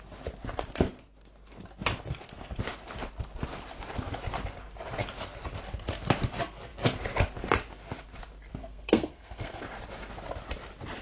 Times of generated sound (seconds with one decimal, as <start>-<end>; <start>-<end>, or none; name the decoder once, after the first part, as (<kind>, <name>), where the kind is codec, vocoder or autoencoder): 8.6-9.6 (codec, SNAC)